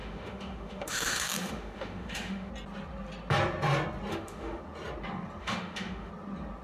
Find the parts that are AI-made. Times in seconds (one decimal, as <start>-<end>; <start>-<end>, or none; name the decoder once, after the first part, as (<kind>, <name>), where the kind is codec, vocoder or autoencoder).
0.0-2.5 (autoencoder, DAC-VAE); 4.1-4.6; 5.4-6.1